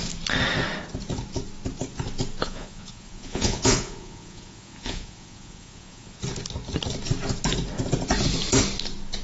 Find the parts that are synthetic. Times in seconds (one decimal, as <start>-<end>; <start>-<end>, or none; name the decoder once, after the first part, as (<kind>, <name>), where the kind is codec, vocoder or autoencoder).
2.4-6.2 (vocoder, Vocos)